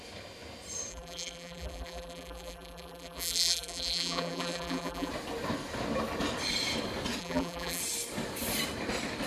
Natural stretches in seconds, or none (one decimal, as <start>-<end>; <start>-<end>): 0.0-0.9; 5.1-7.2; 7.8-9.3